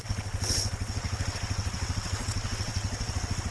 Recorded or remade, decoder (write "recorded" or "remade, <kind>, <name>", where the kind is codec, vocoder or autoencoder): remade, vocoder, WaveNeXt